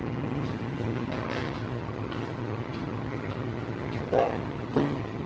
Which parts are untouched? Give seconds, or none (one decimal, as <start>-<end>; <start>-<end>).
none